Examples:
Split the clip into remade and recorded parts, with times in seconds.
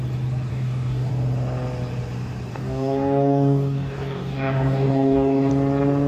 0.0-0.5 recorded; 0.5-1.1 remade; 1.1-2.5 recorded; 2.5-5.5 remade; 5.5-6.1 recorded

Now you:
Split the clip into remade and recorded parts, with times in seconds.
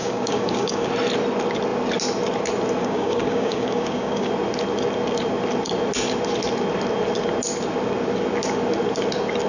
0.0-0.9 remade; 0.9-2.8 recorded; 2.8-4.3 remade; 4.3-9.5 recorded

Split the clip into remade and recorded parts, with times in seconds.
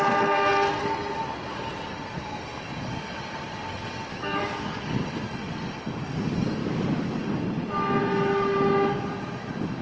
0.0-4.1 recorded; 4.1-4.8 remade; 4.8-6.6 recorded; 6.6-7.2 remade; 7.2-9.8 recorded